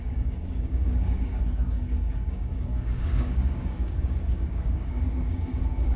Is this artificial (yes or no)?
yes